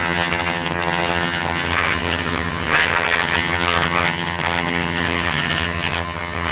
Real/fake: fake